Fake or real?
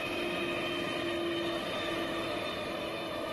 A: real